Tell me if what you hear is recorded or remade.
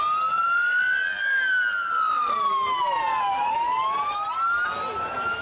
recorded